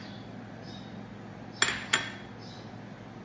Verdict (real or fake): real